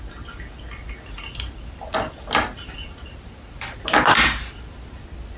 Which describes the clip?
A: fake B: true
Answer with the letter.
B